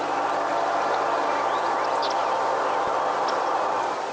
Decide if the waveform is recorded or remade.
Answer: recorded